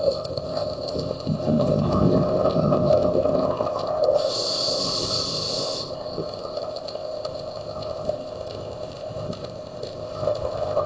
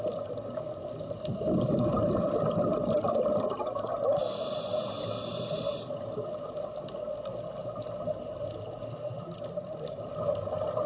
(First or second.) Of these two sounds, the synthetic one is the first